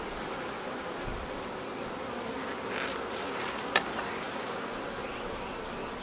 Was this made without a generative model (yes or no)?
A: yes